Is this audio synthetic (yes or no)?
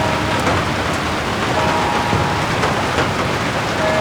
no